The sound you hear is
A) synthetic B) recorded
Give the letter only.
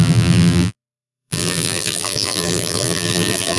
A